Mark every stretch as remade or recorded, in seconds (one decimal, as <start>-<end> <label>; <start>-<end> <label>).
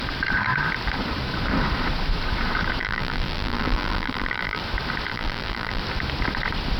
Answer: 0.0-2.8 recorded; 2.8-4.6 remade; 4.6-5.1 recorded; 5.1-5.8 remade; 5.8-6.8 recorded